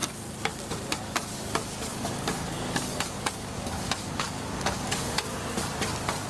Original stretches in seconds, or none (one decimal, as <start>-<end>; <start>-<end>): 0.0-1.9; 5.4-6.3